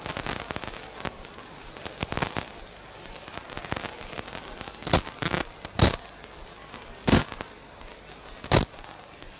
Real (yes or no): yes